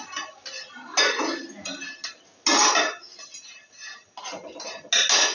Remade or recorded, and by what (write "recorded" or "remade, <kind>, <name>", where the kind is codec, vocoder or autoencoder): recorded